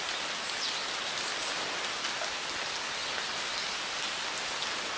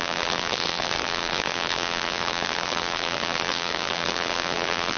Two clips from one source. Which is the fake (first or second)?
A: second